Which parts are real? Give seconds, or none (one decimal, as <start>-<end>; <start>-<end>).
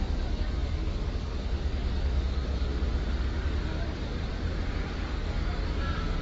2.7-3.2; 4.1-4.9